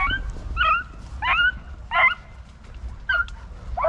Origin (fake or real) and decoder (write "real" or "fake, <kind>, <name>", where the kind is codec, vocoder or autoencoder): real